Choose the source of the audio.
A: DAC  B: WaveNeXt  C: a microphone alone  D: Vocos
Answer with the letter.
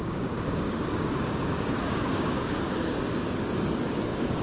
A